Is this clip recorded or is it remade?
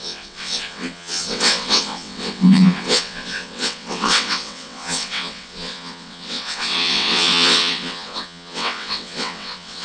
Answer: remade